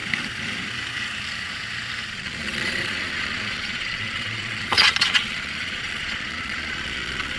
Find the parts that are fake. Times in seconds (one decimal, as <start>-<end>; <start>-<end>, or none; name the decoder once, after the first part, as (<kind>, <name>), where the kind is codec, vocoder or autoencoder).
2.1-7.4 (vocoder, Vocos)